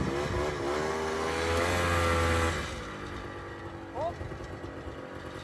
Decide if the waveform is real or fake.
real